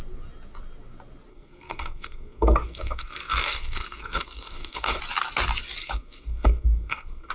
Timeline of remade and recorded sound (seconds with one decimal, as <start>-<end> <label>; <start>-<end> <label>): 0.0-1.3 recorded; 1.3-5.0 remade; 5.0-5.8 recorded; 5.8-7.3 remade